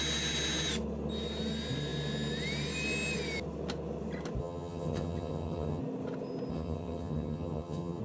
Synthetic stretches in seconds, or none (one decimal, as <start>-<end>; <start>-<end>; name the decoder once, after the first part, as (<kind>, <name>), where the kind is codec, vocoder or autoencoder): 4.4-5.8 (vocoder, HiFi-GAN); 6.5-8.0